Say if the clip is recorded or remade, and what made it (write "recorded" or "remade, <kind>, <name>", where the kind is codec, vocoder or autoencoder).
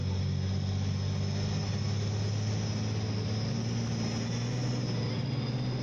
recorded